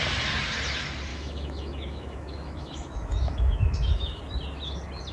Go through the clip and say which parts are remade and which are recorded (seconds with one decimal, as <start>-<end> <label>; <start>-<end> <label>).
0.0-1.1 recorded; 1.1-4.2 remade; 4.2-5.1 recorded